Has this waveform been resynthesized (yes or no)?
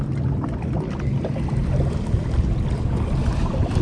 no